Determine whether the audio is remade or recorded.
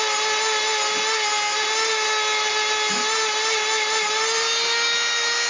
recorded